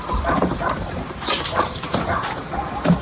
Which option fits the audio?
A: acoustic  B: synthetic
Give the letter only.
A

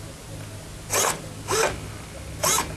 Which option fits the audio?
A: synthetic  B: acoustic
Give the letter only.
B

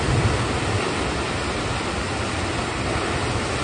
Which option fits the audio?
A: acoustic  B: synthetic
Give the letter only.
A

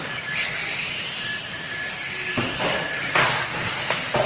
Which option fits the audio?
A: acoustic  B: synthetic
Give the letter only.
A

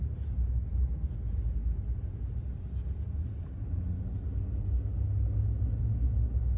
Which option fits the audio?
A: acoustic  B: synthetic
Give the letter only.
A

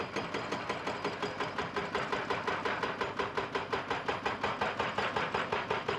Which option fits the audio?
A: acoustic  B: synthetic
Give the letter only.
A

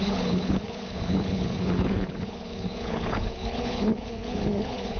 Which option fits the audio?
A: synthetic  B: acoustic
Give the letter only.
A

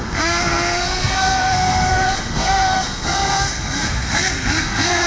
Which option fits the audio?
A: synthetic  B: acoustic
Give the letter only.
A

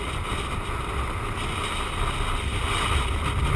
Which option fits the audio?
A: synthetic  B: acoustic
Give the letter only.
B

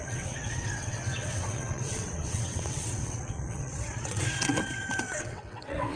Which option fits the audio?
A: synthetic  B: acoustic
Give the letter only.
A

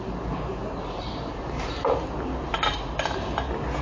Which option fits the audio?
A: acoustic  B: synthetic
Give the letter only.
A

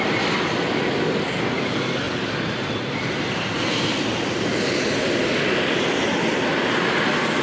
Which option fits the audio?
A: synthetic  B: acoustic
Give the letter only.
B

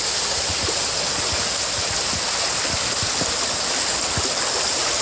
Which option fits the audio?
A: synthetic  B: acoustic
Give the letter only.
B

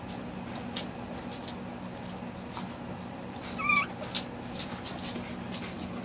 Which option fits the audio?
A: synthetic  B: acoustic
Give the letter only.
B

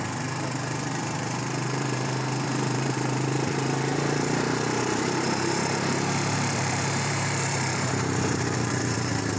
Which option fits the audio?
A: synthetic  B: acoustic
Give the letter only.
A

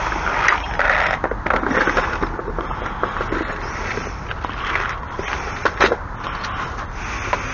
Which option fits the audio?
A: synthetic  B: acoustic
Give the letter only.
B